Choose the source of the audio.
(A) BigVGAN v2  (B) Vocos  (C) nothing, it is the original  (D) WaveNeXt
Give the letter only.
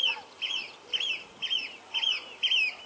C